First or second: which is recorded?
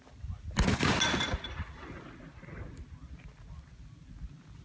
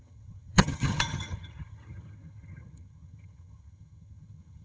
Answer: first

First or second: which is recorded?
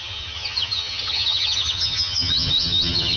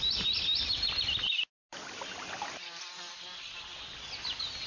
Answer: second